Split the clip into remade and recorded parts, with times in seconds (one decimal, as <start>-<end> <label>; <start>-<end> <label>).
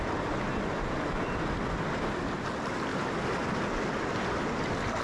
0.0-5.0 recorded